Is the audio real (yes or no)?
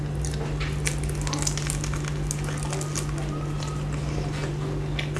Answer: yes